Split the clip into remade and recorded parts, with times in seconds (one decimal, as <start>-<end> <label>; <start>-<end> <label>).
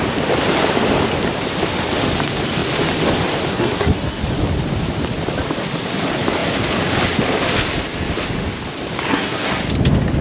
0.0-3.5 recorded; 3.5-4.2 remade; 4.2-9.1 recorded; 9.1-9.6 remade; 9.6-10.2 recorded